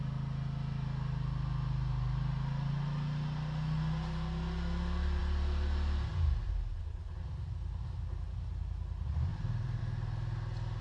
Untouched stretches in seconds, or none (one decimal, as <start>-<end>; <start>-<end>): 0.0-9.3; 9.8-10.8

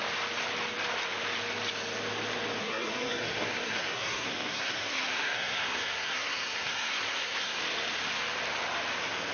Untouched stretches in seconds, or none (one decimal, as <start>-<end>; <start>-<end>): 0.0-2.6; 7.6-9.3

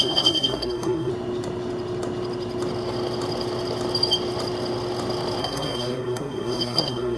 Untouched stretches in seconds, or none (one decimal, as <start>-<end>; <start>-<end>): 1.1-5.4

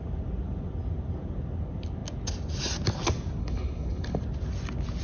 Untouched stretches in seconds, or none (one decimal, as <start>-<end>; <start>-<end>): 0.0-3.4; 4.2-5.0

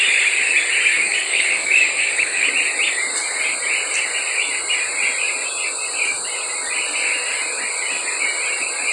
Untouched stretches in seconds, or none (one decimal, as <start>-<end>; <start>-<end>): 0.0-0.9; 2.5-8.9

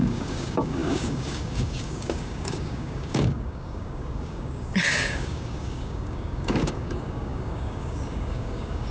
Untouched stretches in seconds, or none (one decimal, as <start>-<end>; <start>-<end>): none

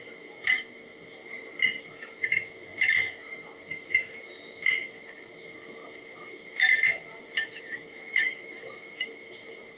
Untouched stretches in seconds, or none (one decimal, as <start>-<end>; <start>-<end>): 1.2-1.8